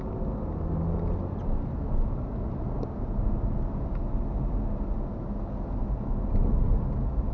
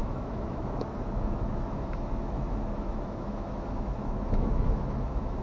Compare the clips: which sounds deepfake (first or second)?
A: second